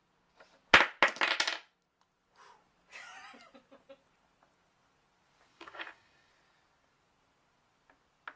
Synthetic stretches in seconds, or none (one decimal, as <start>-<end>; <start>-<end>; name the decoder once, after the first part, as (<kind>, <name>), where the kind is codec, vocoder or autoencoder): 5.5-6.3 (codec, DAC)